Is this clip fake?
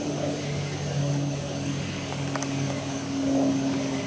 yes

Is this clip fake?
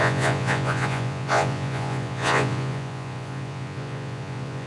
yes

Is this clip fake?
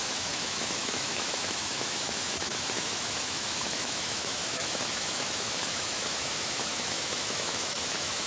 yes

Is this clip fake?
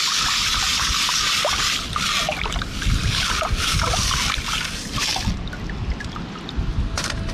no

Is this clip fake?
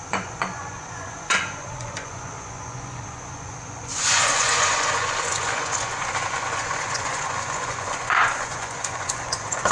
yes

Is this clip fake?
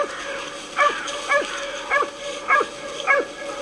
no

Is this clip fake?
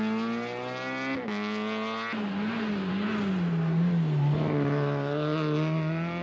no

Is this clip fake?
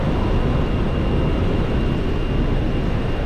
no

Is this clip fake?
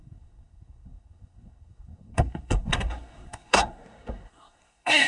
yes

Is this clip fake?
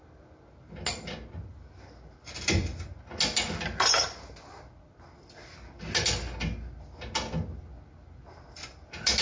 no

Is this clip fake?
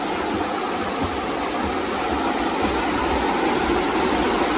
no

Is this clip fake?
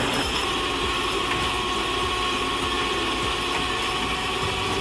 no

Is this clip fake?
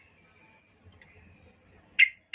no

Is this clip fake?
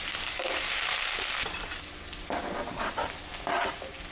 no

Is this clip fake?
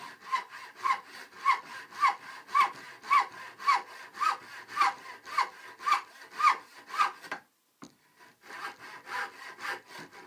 no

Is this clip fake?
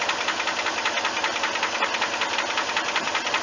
no